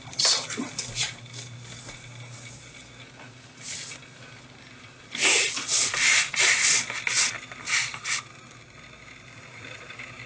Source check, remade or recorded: recorded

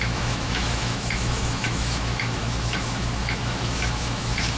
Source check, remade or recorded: remade